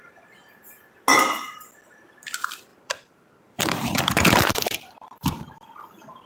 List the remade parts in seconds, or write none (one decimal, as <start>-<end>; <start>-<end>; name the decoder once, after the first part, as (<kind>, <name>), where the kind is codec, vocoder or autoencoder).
0.0-0.4 (vocoder, BigVGAN v2); 2.0-6.3

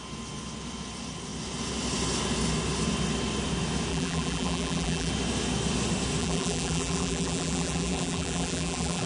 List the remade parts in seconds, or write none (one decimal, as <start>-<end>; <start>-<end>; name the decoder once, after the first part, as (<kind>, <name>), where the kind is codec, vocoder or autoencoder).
3.9-5.1 (vocoder, BigVGAN v2); 6.2-9.1

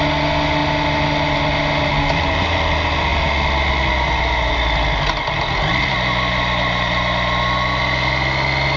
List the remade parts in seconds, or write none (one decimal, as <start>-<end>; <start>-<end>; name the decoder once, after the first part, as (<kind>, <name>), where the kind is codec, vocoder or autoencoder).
none

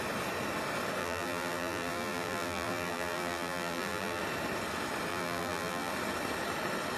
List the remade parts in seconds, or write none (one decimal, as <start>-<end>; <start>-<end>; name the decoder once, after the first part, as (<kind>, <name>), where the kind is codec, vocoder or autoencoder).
1.0-4.2 (vocoder, BigVGAN v2); 5.1-5.9